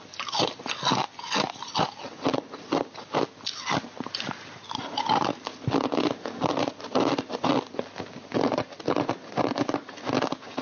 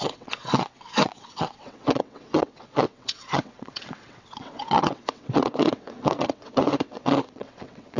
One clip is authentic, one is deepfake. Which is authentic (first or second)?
first